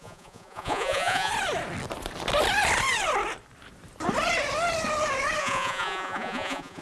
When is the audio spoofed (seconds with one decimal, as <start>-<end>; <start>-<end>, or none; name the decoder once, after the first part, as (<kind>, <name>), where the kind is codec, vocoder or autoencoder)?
0.0-1.3 (vocoder, Vocos); 5.4-6.8